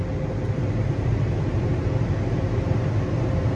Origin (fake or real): real